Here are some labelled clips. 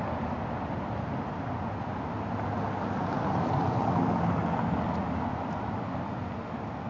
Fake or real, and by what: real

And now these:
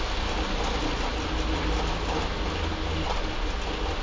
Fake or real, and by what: real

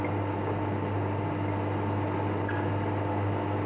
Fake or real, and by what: real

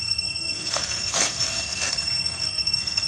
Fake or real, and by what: fake, codec, SNAC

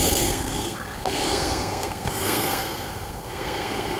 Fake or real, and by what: fake, codec, SNAC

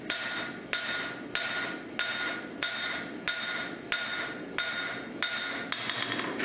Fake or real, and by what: real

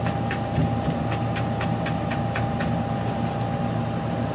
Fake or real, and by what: real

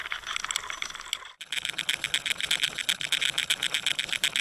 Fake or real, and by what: real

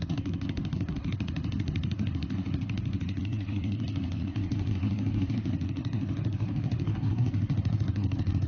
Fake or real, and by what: fake, codec, SNAC